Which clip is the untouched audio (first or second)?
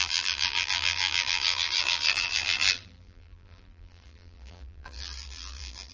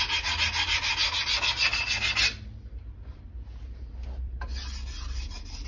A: second